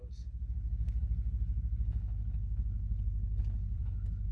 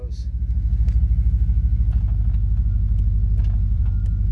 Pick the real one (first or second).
second